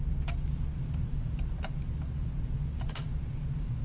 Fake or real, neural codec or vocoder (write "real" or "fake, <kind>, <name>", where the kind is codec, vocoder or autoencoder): real